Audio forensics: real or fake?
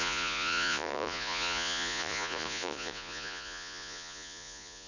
fake